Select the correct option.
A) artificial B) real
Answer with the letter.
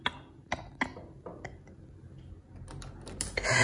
B